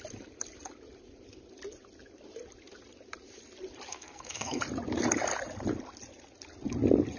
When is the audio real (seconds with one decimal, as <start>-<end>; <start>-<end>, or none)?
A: 0.0-3.9; 4.6-7.2